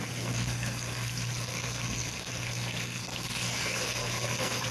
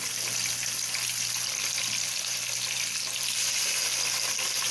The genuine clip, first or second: second